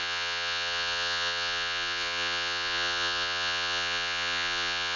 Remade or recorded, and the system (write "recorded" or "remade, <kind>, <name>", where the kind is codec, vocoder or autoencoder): remade, vocoder, Vocos